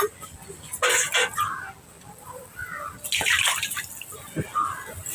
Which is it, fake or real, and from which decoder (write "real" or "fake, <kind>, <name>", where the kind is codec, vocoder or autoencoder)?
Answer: real